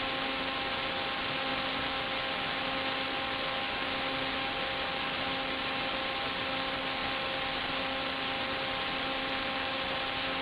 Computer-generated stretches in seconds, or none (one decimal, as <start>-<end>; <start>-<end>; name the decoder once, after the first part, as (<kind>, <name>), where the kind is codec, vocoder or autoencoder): none